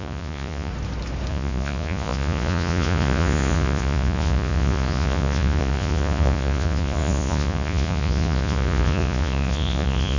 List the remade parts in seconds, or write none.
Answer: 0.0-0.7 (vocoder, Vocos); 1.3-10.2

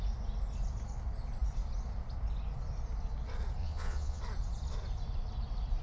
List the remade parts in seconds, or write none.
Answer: 3.6-4.2 (vocoder, Vocos)